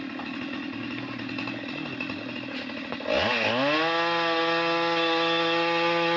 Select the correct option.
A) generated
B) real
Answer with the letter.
B